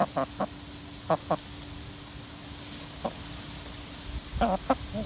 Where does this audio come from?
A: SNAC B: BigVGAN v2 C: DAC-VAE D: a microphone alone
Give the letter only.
D